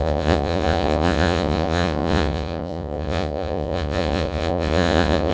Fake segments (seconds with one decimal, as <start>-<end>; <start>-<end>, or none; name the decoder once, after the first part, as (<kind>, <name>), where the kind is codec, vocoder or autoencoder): 0.0-5.3 (vocoder, Vocos)